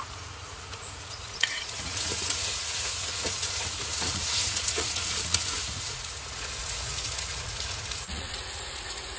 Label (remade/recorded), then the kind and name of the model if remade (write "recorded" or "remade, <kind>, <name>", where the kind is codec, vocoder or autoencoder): remade, vocoder, Vocos